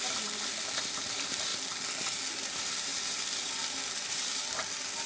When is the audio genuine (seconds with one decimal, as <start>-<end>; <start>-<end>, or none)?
1.5-2.5